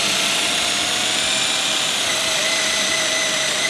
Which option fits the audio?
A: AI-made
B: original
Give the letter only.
B